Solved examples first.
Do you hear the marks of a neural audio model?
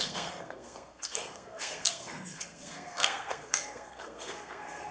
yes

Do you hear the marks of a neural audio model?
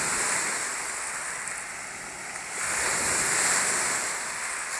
no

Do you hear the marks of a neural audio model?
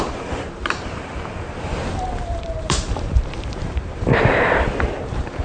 yes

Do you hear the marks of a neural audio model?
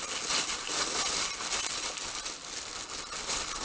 no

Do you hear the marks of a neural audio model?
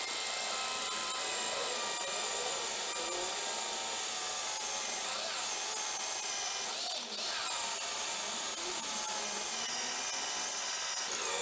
no